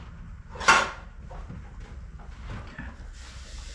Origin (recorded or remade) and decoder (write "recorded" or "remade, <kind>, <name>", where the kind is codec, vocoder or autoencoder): recorded